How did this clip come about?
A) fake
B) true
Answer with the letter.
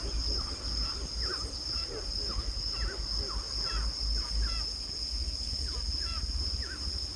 B